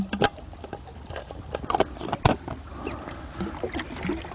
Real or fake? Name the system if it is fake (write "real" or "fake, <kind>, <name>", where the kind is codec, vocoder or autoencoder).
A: real